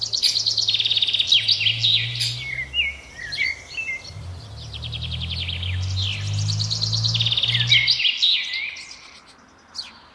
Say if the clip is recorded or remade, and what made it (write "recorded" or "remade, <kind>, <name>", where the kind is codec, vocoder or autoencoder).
recorded